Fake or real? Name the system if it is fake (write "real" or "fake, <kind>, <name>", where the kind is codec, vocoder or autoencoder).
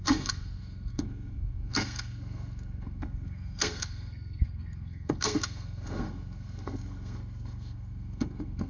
fake, codec, SNAC